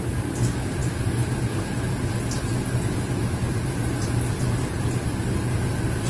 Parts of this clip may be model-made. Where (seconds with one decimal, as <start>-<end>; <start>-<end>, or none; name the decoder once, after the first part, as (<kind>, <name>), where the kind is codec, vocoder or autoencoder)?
none